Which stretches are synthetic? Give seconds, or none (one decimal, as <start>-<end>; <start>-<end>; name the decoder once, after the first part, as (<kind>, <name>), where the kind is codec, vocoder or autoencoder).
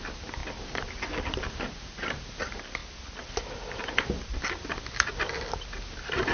none